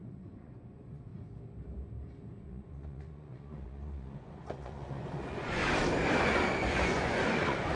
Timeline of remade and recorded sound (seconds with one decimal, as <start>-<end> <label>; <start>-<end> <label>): 0.0-1.1 remade; 1.1-2.4 recorded; 2.4-5.6 remade; 5.6-6.2 recorded; 6.2-7.8 remade